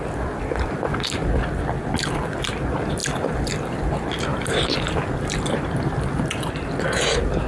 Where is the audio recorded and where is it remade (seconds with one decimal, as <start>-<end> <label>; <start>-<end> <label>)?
0.0-3.0 recorded; 3.0-3.8 remade; 3.8-4.3 recorded; 4.3-6.5 remade; 6.5-7.5 recorded